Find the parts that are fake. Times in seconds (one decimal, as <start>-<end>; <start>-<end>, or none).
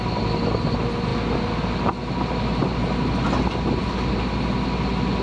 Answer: none